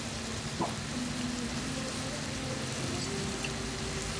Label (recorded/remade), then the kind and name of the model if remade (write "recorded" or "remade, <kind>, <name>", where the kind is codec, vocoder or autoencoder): recorded